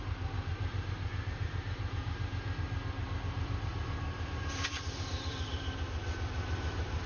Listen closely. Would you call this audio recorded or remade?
remade